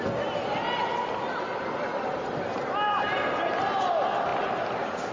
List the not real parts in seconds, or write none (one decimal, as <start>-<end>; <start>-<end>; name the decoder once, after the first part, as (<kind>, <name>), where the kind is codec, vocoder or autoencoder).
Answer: none